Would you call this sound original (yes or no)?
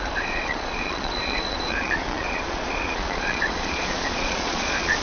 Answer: no